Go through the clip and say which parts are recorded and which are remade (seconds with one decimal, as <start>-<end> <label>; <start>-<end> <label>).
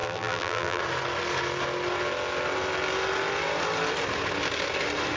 0.0-0.8 remade; 0.8-5.2 recorded